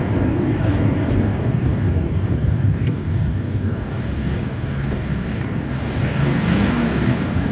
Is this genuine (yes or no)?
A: no